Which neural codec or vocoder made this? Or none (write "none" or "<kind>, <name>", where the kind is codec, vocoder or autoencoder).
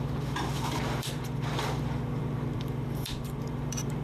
vocoder, BigVGAN v2